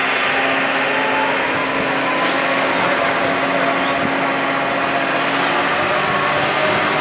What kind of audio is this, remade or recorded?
recorded